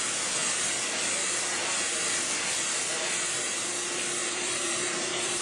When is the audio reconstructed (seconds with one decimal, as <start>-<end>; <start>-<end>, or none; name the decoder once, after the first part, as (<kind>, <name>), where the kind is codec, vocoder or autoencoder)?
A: 4.2-5.4 (vocoder, BigVGAN v2)